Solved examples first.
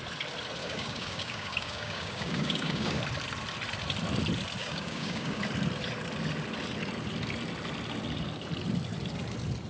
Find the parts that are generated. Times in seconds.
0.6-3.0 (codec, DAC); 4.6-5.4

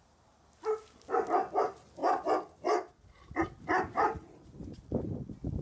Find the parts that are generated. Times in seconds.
none

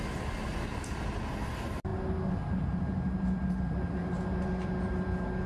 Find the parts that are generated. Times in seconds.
none

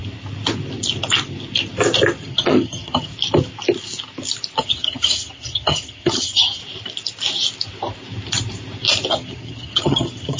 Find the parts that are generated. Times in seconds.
2.2-3.1 (vocoder, HiFi-GAN); 4.6-6.6; 9.1-10.4

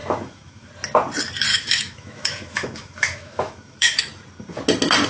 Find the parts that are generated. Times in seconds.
0.0-0.7 (autoencoder, DAC-VAE); 1.5-4.0

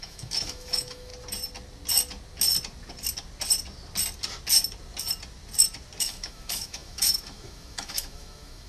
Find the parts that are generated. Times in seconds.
0.0-1.1 (autoencoder, DAC-VAE); 6.0-8.7